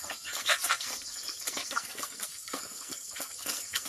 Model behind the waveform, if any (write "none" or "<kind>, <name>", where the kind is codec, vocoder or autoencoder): codec, SNAC